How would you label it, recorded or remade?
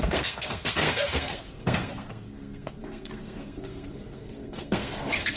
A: remade